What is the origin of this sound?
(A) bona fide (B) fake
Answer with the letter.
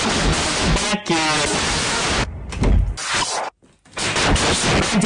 A